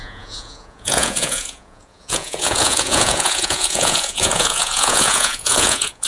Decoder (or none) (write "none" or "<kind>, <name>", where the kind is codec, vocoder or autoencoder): vocoder, Vocos